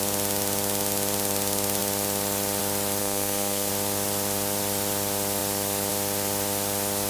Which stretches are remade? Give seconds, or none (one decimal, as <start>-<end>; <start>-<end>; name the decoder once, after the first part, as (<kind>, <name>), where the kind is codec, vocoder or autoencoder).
3.0-3.7 (codec, SNAC)

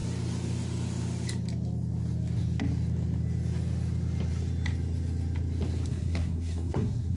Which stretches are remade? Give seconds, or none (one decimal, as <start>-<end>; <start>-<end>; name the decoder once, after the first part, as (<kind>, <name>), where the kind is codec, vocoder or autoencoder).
5.9-7.2 (codec, SNAC)

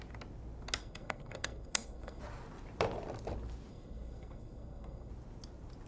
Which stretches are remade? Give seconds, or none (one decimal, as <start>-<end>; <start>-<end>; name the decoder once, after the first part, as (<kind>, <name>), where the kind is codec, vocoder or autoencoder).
0.8-2.2 (codec, SNAC); 3.7-5.1

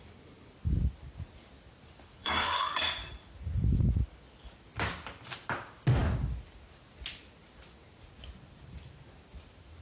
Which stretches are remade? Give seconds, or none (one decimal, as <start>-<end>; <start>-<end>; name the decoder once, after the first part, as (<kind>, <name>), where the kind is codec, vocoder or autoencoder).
2.2-2.8 (codec, DAC)

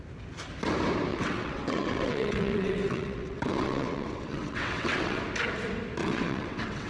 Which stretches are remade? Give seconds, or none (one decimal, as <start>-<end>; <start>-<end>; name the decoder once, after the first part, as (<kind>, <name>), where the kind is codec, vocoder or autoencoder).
1.1-5.2 (vocoder, WaveNeXt); 6.0-6.9

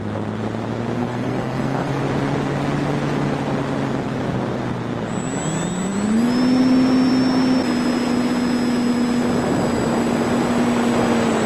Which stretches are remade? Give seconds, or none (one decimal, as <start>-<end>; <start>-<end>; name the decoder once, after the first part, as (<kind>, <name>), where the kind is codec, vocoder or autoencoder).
1.0-2.0 (codec, SNAC)

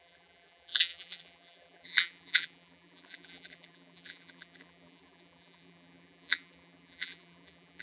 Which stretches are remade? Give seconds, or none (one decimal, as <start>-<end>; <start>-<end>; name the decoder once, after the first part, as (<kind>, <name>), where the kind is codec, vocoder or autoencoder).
0.0-7.8 (vocoder, BigVGAN v2)

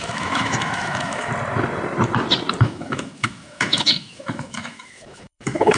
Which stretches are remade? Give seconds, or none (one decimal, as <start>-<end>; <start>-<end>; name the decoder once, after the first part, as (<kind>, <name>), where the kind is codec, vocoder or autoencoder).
0.0-1.3 (autoencoder, DAC-VAE); 2.6-5.8